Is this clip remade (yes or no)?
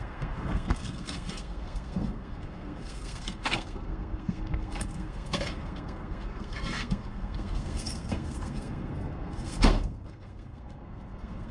yes